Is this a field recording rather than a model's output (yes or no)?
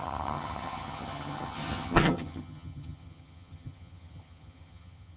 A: no